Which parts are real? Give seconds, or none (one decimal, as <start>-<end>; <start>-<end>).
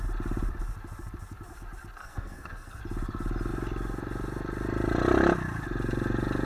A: 0.0-2.0; 2.8-6.5